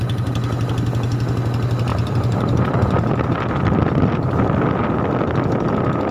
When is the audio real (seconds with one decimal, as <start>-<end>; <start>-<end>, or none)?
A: 0.0-1.9; 4.6-6.1